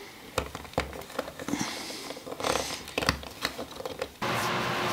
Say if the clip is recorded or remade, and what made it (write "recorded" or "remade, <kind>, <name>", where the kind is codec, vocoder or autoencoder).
recorded